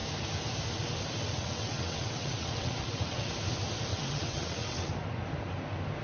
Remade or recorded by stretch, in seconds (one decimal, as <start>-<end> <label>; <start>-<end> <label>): 0.0-1.3 recorded; 1.3-3.3 remade; 3.3-3.9 recorded; 3.9-4.9 remade; 4.9-6.0 recorded